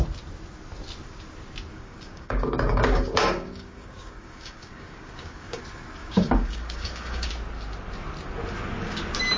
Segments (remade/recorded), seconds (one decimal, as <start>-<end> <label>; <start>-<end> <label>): 0.0-1.7 recorded; 1.7-5.6 remade; 5.6-6.0 recorded; 6.0-7.3 remade; 7.3-9.4 recorded